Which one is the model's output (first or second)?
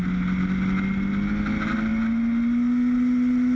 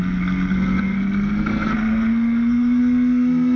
second